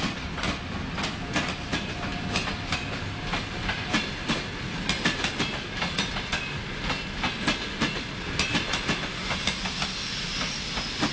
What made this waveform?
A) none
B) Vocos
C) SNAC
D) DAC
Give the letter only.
A